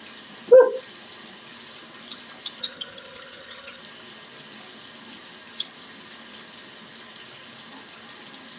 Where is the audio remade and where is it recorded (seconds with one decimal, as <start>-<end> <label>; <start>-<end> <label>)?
0.0-2.6 recorded; 2.6-3.8 remade; 3.8-8.6 recorded